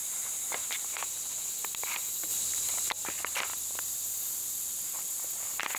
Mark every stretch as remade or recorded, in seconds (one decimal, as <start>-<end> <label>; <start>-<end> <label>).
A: 0.0-0.9 remade; 0.9-2.3 recorded; 2.3-2.9 remade; 2.9-5.8 recorded